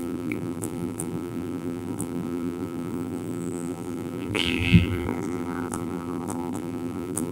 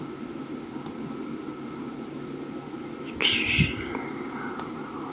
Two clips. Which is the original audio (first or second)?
second